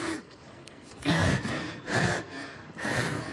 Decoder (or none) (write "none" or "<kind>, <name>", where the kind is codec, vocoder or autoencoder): codec, SNAC